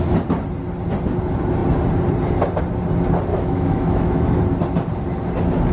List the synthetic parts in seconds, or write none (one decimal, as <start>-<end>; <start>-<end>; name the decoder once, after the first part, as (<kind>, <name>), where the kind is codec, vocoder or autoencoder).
3.3-4.4 (autoencoder, DAC-VAE)